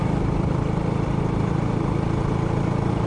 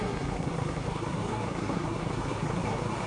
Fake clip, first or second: second